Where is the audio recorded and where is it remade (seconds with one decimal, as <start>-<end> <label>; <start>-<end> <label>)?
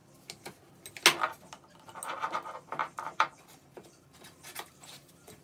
0.0-2.8 recorded; 2.8-5.4 remade